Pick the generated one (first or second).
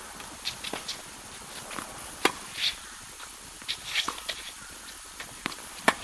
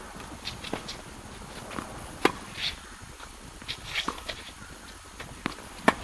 first